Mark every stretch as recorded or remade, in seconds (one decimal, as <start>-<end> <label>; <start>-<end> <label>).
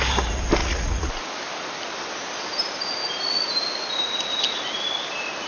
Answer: 0.0-0.6 recorded; 0.6-1.2 remade; 1.2-5.5 recorded